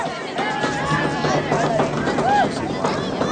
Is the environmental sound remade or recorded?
recorded